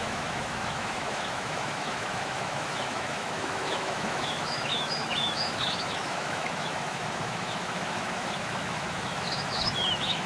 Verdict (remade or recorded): remade